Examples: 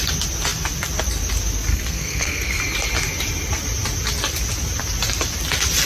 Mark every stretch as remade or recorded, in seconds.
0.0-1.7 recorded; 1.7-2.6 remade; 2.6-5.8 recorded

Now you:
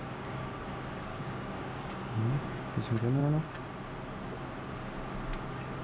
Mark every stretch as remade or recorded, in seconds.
0.0-0.6 remade; 0.6-1.1 recorded; 1.1-2.6 remade; 2.6-5.8 recorded

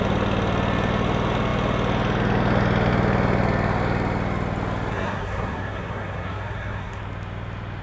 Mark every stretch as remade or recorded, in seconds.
0.0-4.9 recorded; 4.9-7.0 remade; 7.0-7.8 recorded

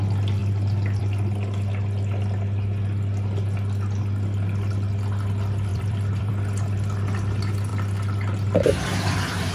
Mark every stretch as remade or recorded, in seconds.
0.0-5.7 recorded; 5.7-6.3 remade; 6.3-9.5 recorded